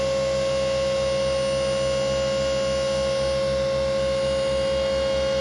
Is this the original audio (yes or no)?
yes